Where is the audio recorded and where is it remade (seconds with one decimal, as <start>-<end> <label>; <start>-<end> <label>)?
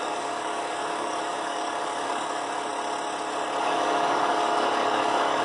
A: 0.0-2.7 remade; 2.7-3.6 recorded; 3.6-5.4 remade